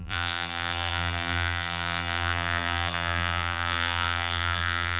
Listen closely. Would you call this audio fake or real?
fake